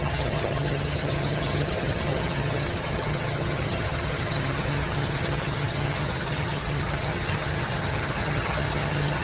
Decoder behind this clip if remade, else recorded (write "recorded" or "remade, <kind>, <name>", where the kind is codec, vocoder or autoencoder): remade, vocoder, HiFi-GAN